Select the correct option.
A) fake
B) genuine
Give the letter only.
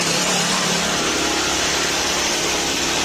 A